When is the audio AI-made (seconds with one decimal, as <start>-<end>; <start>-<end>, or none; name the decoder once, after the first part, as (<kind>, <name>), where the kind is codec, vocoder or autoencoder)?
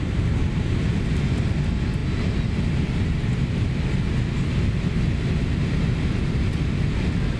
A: none